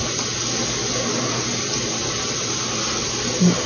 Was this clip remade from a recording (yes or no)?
no